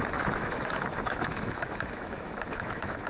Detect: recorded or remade remade